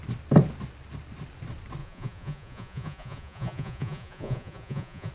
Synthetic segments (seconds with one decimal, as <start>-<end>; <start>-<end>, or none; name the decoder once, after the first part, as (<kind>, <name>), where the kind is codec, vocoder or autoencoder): 1.8-5.1 (vocoder, Vocos)